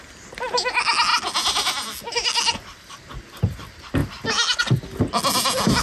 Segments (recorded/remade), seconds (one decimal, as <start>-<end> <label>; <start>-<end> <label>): 0.0-5.8 recorded